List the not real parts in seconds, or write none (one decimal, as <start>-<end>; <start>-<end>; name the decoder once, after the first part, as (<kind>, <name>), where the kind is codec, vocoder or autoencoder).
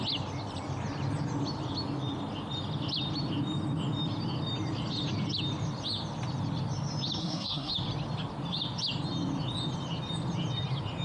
7.2-7.7 (codec, SNAC)